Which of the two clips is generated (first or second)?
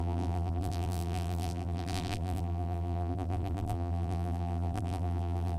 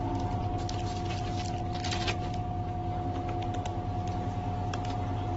first